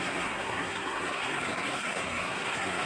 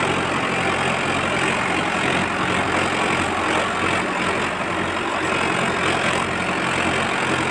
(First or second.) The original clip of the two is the second